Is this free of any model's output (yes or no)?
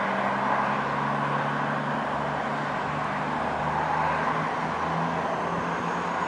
yes